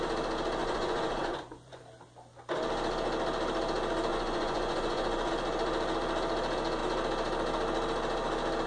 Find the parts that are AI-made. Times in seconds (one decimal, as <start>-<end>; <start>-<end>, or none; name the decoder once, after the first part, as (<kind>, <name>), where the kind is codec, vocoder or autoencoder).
0.6-1.8 (vocoder, Vocos); 4.1-5.3